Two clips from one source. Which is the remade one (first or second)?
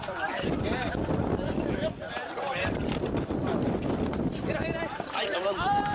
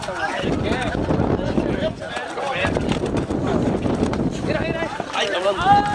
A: first